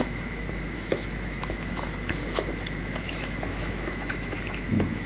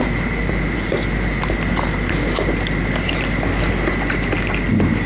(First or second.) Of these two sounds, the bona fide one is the second